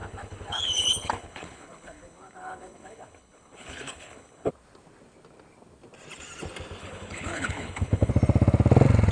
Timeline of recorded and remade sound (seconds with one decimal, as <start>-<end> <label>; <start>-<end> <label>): 0.0-4.5 remade; 4.5-6.8 recorded; 6.8-8.1 remade; 8.1-9.1 recorded